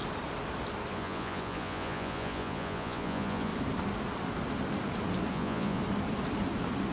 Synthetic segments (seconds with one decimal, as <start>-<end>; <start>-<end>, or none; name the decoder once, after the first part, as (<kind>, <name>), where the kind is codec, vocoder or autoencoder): 0.9-3.5 (vocoder, Vocos); 5.3-5.8